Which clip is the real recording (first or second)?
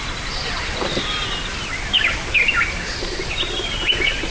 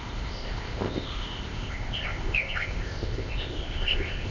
first